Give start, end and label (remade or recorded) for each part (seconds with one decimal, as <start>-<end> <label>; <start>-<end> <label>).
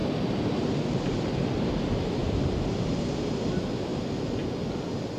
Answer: 0.0-0.6 remade; 0.6-5.2 recorded